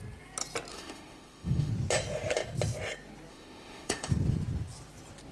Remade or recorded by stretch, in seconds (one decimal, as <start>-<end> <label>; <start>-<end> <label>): 0.0-0.7 recorded; 0.7-1.7 remade; 1.7-3.3 recorded; 3.3-4.1 remade; 4.1-5.3 recorded